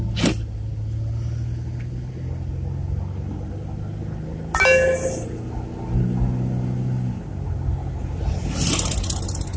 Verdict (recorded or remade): recorded